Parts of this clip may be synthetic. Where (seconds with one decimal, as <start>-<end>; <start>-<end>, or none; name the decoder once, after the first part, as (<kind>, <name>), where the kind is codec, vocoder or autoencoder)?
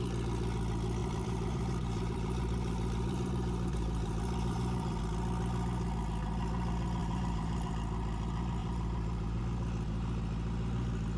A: 1.0-5.0 (vocoder, BigVGAN v2); 7.0-7.7; 8.6-9.4